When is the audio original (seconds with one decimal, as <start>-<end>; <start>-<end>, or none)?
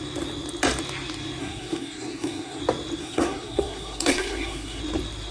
0.0-1.4; 2.6-3.0; 4.8-5.3